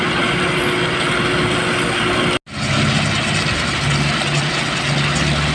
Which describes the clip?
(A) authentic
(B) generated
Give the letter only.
A